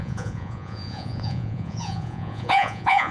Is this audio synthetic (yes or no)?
yes